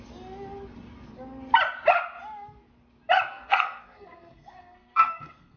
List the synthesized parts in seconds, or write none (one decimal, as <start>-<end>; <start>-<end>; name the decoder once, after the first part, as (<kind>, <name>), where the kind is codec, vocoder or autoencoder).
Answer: 3.3-5.6 (codec, SNAC)